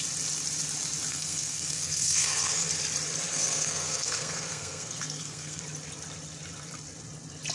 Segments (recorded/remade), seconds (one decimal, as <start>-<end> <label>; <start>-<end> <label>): 0.0-1.1 recorded; 1.1-2.7 remade; 2.7-3.3 recorded; 3.3-5.6 remade; 5.6-7.5 recorded